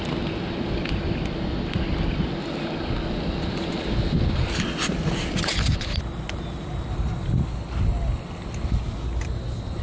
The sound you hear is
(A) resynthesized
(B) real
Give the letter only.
B